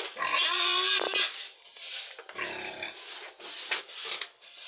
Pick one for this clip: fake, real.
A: real